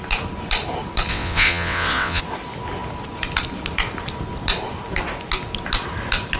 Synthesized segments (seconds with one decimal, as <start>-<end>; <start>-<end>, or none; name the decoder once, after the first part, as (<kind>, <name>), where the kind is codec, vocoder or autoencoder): 1.1-2.2 (vocoder, WaveNeXt)